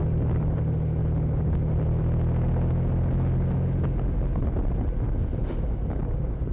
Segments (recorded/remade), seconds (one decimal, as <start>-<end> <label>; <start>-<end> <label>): 0.0-6.5 recorded